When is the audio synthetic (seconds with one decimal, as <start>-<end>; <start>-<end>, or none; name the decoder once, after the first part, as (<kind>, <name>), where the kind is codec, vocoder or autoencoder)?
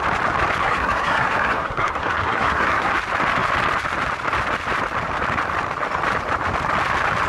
0.6-2.9 (codec, SNAC)